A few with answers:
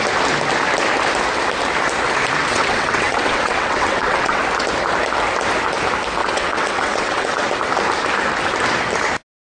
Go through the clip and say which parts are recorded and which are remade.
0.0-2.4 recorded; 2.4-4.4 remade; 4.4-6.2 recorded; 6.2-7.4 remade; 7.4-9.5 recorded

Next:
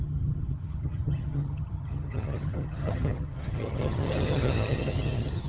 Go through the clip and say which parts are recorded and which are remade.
0.0-5.5 remade

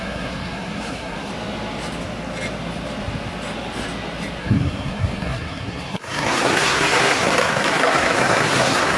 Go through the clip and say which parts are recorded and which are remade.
0.0-1.3 remade; 1.3-4.4 recorded; 4.4-9.0 remade

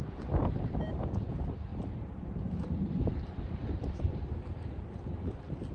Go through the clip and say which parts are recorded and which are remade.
0.0-1.7 recorded; 1.7-4.2 remade; 4.2-5.7 recorded

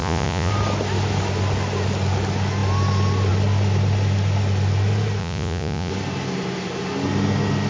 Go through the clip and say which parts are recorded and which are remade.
0.0-0.5 remade; 0.5-5.2 recorded; 5.2-5.9 remade; 5.9-7.7 recorded

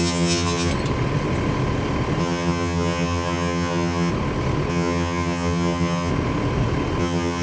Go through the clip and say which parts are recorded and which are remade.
0.0-0.7 remade; 0.7-2.2 recorded; 2.2-4.1 remade; 4.1-4.7 recorded; 4.7-6.1 remade; 6.1-7.0 recorded; 7.0-7.4 remade

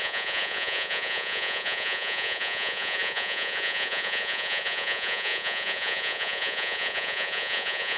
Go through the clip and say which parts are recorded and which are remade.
0.0-8.0 remade

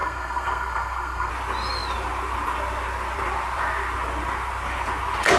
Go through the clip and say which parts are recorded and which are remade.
0.0-1.3 remade; 1.3-5.4 recorded